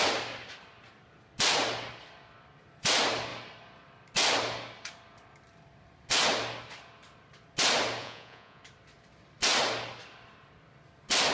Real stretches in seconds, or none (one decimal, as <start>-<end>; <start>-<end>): 0.0-8.0; 8.6-11.3